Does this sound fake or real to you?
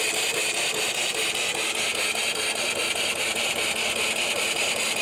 real